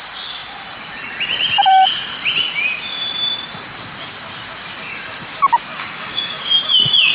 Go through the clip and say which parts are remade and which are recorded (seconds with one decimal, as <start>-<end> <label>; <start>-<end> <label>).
0.0-5.7 recorded; 5.7-6.5 remade; 6.5-7.1 recorded